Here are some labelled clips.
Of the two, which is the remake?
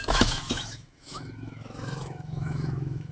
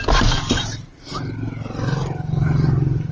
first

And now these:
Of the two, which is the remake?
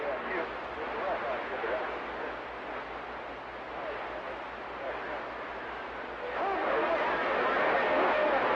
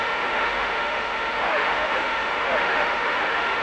second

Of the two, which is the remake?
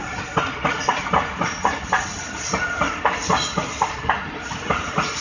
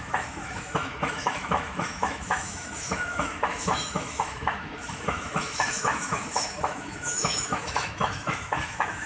second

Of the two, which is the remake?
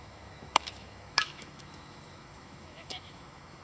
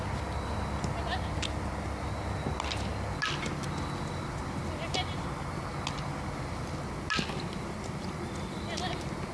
first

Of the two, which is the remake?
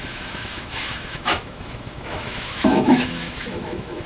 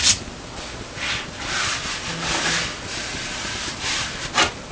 first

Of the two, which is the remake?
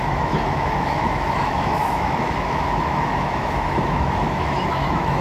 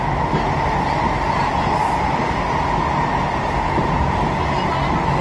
first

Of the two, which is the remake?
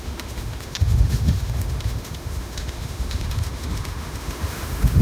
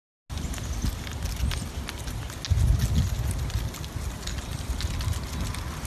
first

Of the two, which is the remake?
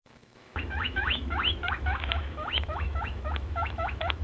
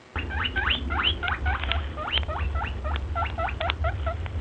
first